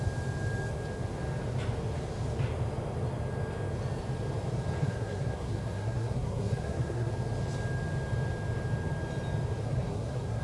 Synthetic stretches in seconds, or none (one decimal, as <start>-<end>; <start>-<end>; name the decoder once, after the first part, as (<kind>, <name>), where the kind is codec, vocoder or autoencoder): 4.8-7.1 (codec, SNAC); 9.6-10.4